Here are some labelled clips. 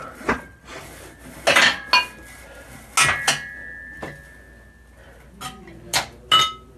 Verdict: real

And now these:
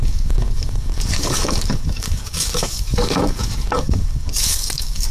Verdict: fake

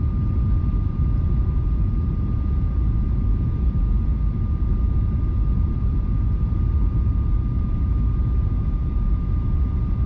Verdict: fake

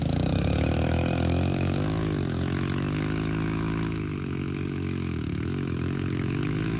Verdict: fake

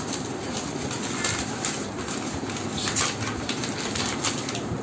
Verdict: real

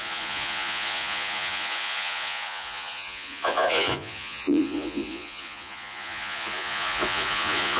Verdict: fake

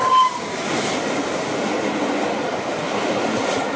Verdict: real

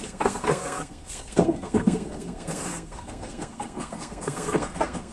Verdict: fake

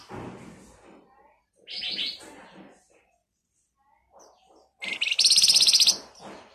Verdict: real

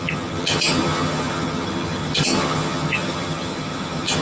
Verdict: fake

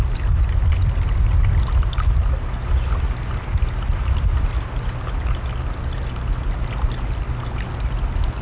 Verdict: real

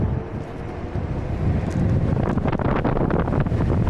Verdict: real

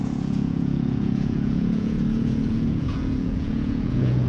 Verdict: fake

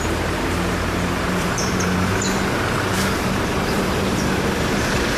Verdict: fake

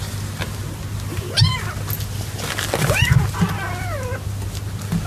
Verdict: real